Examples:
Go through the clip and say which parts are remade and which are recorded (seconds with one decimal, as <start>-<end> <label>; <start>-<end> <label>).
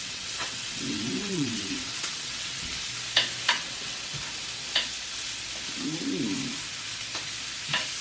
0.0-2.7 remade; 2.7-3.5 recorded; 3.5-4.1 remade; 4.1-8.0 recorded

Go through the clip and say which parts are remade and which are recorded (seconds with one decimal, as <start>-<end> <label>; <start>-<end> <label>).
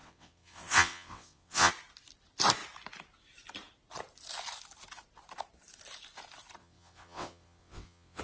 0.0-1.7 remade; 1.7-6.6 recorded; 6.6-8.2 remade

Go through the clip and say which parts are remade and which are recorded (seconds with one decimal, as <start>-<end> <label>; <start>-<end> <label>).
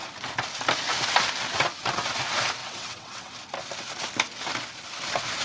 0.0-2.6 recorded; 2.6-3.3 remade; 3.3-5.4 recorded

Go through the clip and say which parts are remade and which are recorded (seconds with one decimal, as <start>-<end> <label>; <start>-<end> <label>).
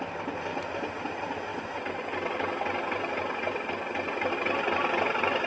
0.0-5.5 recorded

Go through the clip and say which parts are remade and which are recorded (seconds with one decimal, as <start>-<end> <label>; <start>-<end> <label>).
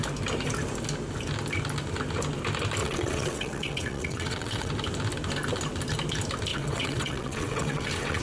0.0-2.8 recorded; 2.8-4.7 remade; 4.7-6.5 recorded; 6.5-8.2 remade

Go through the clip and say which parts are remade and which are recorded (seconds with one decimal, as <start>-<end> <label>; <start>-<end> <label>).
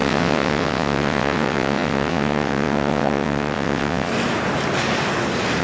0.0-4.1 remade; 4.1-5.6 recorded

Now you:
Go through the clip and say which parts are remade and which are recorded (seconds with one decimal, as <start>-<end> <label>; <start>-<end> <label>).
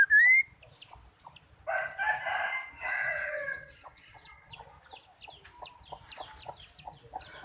0.0-2.9 recorded; 2.9-4.5 remade; 4.5-7.4 recorded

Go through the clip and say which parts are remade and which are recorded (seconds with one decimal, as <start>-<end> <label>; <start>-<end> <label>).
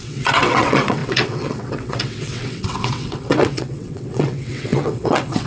0.0-5.5 remade